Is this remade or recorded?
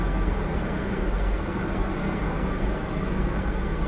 remade